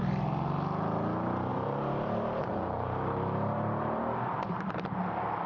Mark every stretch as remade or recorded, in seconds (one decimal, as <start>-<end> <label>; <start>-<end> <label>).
0.0-1.5 recorded; 1.5-4.8 remade; 4.8-5.5 recorded